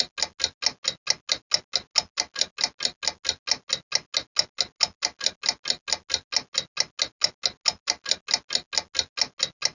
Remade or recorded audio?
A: recorded